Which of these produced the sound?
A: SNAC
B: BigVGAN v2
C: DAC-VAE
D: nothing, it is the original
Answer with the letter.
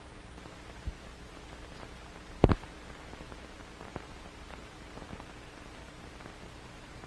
B